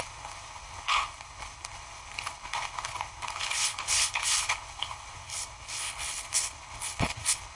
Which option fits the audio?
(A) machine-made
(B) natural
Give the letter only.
A